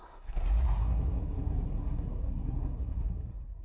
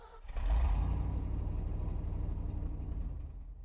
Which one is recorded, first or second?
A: second